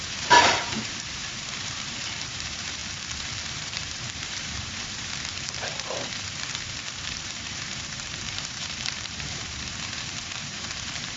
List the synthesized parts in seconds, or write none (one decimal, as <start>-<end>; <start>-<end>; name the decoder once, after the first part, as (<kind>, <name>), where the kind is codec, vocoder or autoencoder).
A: 0.0-2.8 (vocoder, BigVGAN v2); 3.4-11.2